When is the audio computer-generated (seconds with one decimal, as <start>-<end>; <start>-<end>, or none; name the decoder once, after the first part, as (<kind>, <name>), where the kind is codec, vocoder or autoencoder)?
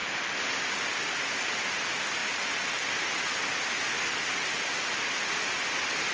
none